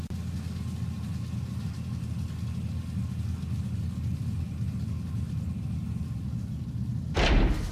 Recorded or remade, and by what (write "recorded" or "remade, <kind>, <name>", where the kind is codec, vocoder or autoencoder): recorded